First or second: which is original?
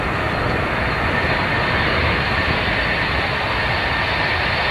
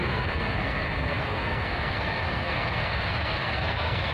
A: first